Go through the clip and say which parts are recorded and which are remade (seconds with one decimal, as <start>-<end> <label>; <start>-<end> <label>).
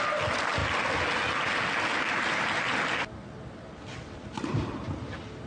0.0-5.5 recorded